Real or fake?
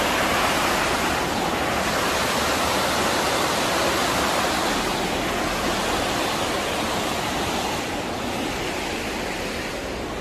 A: real